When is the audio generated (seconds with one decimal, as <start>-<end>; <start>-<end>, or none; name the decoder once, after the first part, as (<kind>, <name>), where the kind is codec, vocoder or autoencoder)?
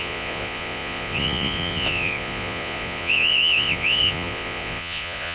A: 0.0-5.3 (vocoder, Vocos)